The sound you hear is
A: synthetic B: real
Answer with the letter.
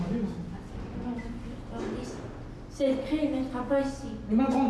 B